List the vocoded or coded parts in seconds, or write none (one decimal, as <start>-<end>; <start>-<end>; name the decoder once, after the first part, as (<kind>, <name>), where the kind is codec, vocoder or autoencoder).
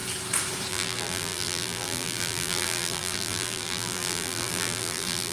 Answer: 0.7-5.3 (vocoder, BigVGAN v2)